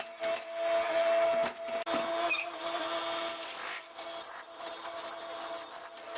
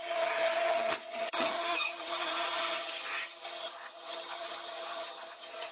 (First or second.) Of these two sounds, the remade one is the second